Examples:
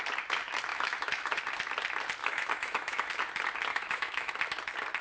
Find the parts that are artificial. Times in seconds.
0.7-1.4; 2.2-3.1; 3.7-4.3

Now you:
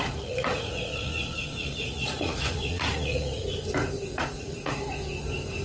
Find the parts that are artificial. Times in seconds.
0.0-3.4; 4.1-4.7

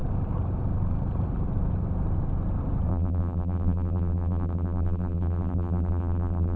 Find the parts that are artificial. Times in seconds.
2.9-6.6

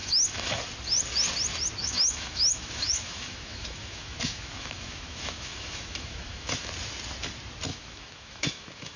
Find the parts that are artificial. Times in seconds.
0.0-0.6; 1.8-6.7; 7.7-9.0

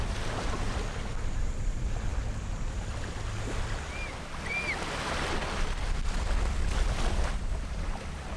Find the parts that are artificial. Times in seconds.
none